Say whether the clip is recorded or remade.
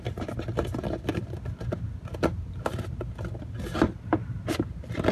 recorded